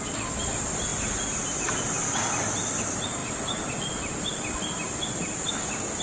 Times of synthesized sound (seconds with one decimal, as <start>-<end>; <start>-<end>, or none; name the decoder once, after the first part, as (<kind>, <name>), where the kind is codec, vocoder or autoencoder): none